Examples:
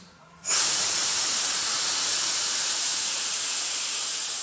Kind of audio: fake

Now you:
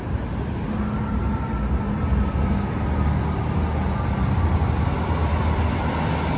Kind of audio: real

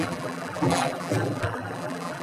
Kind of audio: fake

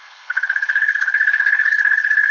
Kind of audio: fake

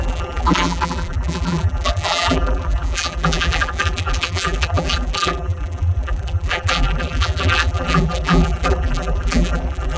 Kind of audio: fake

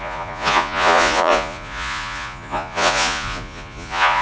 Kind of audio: fake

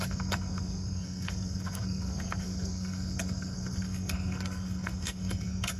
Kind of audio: fake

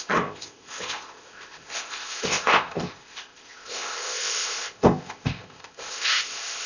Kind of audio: fake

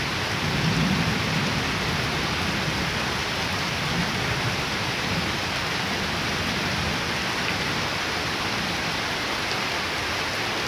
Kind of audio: fake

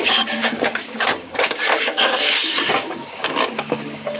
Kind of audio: fake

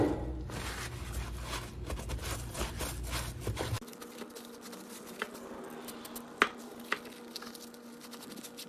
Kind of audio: real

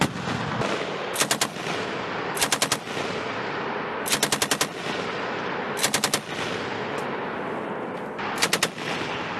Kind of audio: real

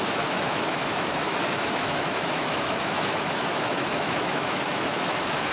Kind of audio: fake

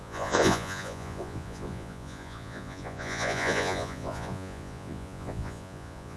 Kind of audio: fake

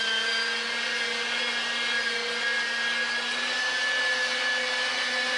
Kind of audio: real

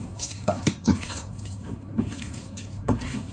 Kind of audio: fake